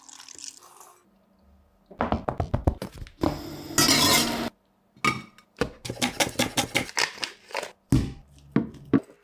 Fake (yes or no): no